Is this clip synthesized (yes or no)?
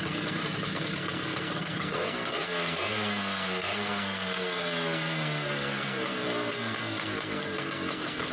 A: yes